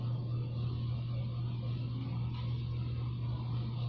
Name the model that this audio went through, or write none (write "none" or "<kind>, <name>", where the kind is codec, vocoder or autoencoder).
none